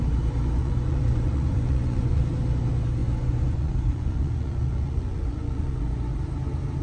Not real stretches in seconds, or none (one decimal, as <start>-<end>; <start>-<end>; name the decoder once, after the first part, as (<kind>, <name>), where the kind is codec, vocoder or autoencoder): 0.6-2.2 (vocoder, Vocos); 3.0-6.2